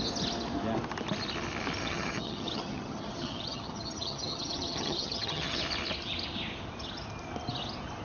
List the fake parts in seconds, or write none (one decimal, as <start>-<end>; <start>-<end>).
1.8-5.6